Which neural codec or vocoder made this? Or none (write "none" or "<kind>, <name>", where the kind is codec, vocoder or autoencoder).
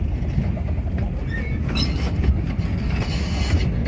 none